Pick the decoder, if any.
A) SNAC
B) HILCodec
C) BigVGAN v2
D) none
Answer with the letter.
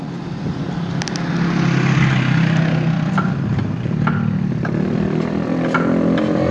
D